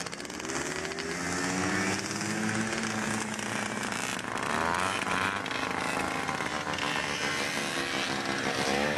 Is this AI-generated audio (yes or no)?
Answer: no